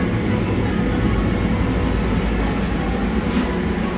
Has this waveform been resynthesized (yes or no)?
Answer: no